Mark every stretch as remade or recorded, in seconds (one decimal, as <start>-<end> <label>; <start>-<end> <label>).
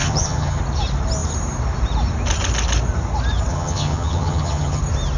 0.0-0.6 remade; 0.6-3.5 recorded; 3.5-4.8 remade; 4.8-5.2 recorded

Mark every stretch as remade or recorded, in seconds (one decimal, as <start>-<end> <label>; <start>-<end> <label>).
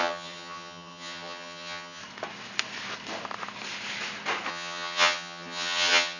0.0-2.0 remade; 2.0-4.5 recorded; 4.5-6.2 remade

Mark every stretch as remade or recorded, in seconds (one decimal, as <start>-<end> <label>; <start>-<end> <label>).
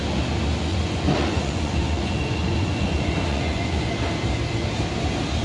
0.0-0.7 recorded; 0.7-3.9 remade; 3.9-5.4 recorded